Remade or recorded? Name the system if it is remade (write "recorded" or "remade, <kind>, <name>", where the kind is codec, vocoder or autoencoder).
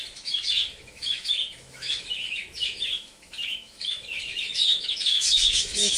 remade, autoencoder, DAC-VAE